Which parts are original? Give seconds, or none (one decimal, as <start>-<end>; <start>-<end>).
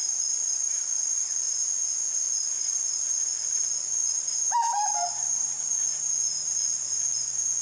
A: 0.0-7.6